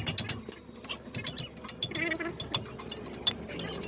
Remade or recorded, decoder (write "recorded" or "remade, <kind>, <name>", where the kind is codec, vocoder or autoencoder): recorded